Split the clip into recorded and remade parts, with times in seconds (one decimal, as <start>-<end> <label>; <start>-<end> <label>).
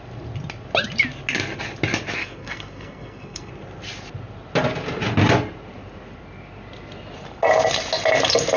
0.0-2.2 recorded; 2.2-3.5 remade; 3.5-8.6 recorded